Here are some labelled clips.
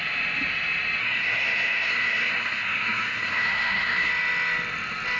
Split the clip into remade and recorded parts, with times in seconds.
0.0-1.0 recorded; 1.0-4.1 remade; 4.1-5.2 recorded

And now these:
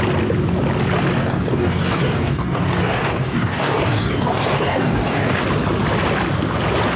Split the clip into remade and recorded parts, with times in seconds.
0.0-1.2 recorded; 1.2-5.4 remade; 5.4-7.0 recorded

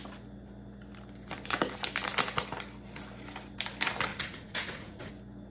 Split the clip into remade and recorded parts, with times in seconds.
0.0-4.1 recorded; 4.1-5.1 remade; 5.1-5.5 recorded

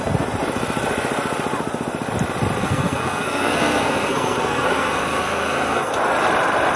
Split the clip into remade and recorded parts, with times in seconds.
0.0-2.6 recorded; 2.6-5.9 remade; 5.9-6.8 recorded

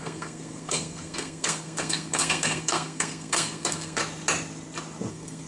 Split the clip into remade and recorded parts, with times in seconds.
0.0-4.0 remade; 4.0-5.1 recorded; 5.1-5.5 remade

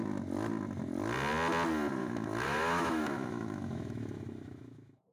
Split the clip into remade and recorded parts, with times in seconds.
0.0-2.0 recorded; 2.0-5.1 remade

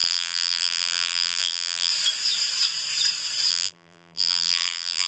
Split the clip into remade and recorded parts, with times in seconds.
0.0-1.9 remade; 1.9-3.5 recorded; 3.5-5.1 remade

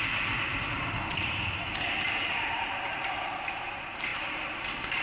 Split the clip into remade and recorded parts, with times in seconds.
0.0-0.5 recorded; 0.5-3.1 remade; 3.1-4.1 recorded; 4.1-4.6 remade; 4.6-5.0 recorded